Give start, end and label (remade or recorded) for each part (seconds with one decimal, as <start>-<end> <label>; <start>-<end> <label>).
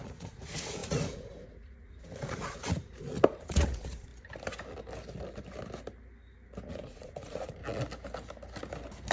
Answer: 0.0-4.1 remade; 4.1-6.7 recorded; 6.7-7.6 remade; 7.6-9.1 recorded